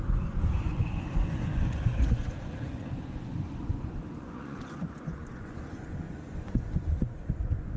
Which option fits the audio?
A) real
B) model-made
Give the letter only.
B